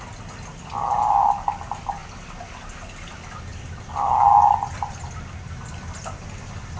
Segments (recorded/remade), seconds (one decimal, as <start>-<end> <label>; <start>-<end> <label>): 0.0-6.8 recorded

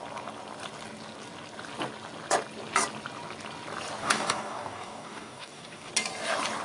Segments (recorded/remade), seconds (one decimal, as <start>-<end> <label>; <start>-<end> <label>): 0.0-4.0 recorded; 4.0-5.9 remade; 5.9-6.6 recorded